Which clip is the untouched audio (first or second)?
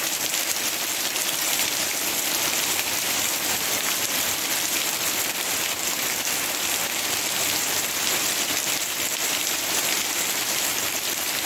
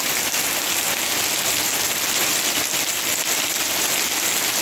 second